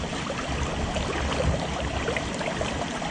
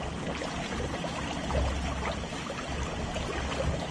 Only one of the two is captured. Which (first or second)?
second